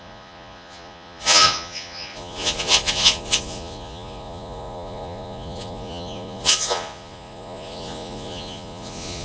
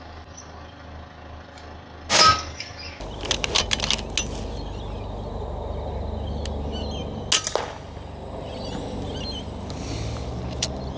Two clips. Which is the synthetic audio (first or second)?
first